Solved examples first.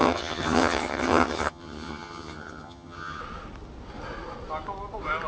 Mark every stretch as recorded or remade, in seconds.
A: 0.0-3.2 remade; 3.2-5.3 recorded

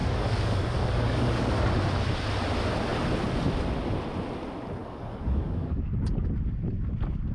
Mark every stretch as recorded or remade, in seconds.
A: 0.0-1.7 remade; 1.7-4.8 recorded; 4.8-5.9 remade; 5.9-7.3 recorded